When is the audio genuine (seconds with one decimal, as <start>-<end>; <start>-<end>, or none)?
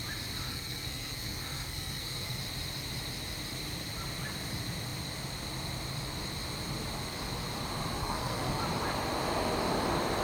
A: 0.0-0.5; 2.4-8.0; 8.6-10.2